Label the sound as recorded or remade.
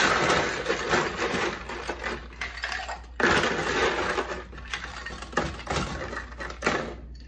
recorded